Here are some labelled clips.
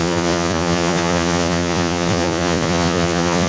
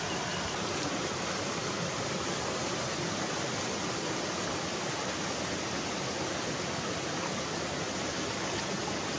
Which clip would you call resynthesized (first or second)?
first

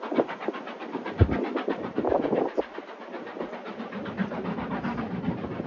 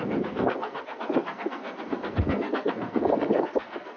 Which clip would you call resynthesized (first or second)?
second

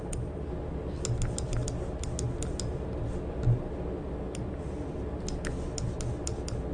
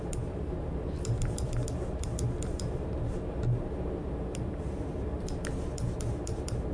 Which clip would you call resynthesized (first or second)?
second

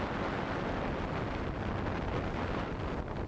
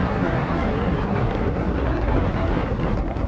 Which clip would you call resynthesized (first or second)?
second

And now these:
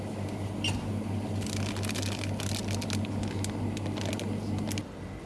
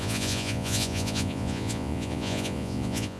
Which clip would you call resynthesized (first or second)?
second